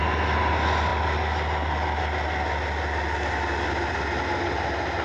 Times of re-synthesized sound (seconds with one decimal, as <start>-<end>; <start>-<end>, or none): none